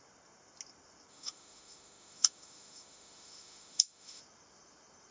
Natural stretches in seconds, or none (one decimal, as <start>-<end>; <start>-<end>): 0.0-1.1; 4.2-5.1